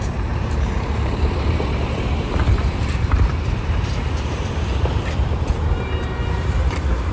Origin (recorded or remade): remade